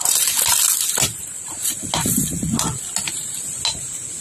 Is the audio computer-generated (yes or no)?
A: no